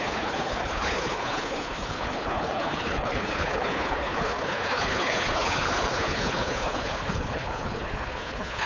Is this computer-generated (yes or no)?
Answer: yes